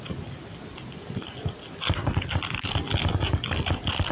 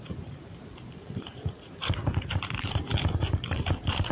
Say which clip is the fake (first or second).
second